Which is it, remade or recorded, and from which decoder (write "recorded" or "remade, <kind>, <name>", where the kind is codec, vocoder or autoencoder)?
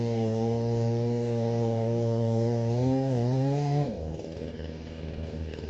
remade, codec, DAC